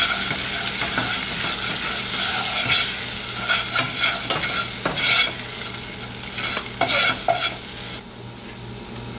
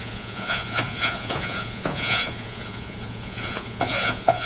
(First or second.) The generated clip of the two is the second